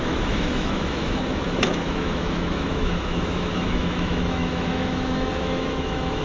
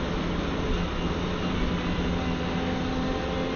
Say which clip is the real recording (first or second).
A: second